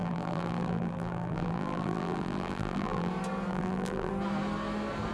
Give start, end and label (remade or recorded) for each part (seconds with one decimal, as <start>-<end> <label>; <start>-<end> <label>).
0.0-3.1 remade; 3.1-3.5 recorded; 3.5-4.1 remade; 4.1-5.1 recorded